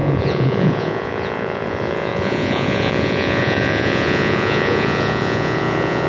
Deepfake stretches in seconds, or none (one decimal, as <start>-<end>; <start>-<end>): 0.0-6.1